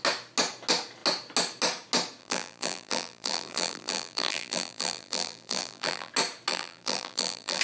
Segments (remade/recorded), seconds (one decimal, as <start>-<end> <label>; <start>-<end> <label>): 0.0-2.2 recorded; 2.2-6.1 remade; 6.1-6.5 recorded; 6.5-7.6 remade